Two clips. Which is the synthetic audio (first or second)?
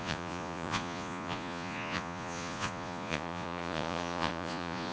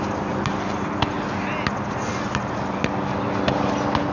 first